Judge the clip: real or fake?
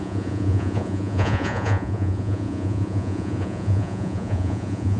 fake